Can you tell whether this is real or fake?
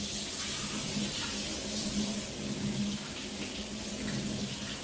real